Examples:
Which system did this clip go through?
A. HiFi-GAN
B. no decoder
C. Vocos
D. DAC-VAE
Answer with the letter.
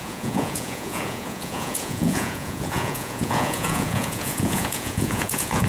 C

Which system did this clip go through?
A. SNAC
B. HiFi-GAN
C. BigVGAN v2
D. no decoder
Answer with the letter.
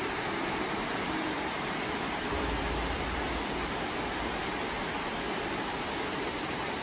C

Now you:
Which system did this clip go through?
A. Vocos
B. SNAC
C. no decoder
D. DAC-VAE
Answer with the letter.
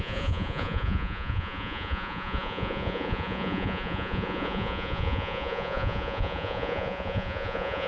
A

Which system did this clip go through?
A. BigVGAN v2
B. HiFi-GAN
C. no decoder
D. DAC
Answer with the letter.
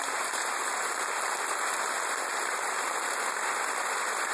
A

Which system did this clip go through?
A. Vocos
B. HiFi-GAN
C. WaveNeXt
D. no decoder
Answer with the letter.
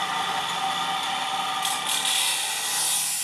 D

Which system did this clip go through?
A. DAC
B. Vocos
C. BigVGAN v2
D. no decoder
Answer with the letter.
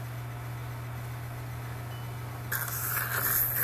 D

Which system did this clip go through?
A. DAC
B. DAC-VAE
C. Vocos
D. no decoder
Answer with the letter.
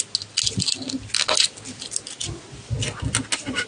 D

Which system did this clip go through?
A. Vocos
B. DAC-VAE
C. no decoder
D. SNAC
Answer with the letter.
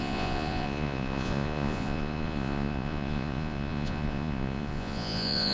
A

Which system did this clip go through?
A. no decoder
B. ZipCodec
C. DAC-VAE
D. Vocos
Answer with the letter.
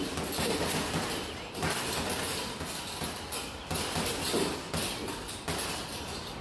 A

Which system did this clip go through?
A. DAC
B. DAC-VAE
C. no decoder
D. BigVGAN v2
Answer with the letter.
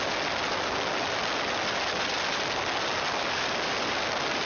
C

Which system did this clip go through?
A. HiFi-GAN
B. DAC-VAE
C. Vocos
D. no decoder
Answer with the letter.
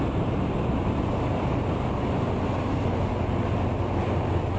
D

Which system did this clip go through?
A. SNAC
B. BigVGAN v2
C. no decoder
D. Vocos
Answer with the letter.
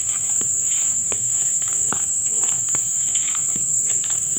A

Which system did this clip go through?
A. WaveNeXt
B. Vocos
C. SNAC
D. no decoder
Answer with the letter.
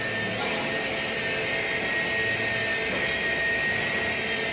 D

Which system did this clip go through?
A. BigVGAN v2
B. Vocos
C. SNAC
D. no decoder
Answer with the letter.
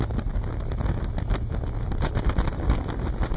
D